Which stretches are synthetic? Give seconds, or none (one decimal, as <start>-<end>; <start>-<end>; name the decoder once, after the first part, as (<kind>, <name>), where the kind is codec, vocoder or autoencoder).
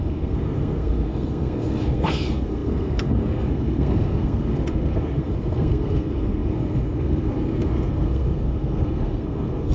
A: 0.0-9.7 (codec, SNAC)